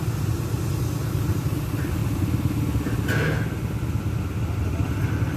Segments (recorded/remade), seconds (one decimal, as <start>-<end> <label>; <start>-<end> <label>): 0.0-1.0 recorded; 1.0-1.5 remade; 1.5-5.4 recorded